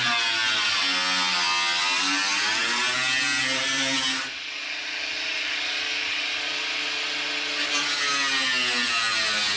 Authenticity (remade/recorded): recorded